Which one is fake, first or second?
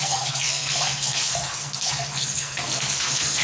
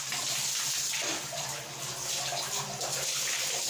first